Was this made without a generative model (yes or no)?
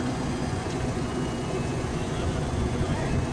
no